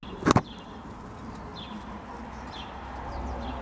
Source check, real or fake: real